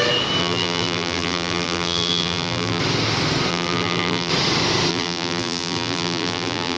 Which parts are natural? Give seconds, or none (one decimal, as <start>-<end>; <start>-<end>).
0.0-0.4; 2.8-3.5; 4.3-4.9